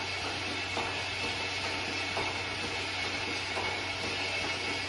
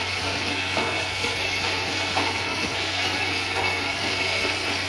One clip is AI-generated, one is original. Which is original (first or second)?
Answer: first